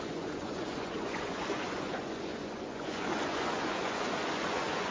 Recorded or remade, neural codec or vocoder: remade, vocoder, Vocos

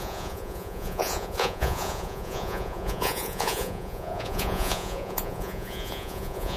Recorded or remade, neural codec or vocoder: remade, vocoder, Vocos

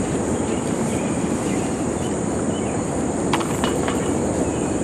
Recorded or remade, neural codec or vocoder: remade, vocoder, BigVGAN v2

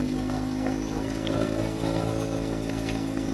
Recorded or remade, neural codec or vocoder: remade, codec, SNAC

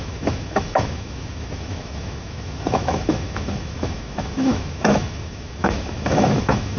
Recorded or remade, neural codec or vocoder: remade, autoencoder, DAC-VAE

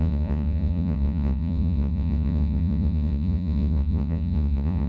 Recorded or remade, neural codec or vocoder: remade, vocoder, Vocos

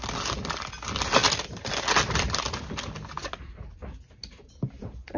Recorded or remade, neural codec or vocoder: recorded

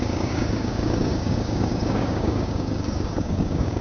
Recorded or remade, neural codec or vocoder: remade, codec, DAC